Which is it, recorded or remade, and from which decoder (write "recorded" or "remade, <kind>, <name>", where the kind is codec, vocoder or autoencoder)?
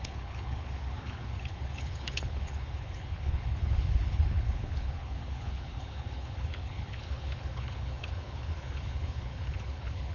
remade, codec, HILCodec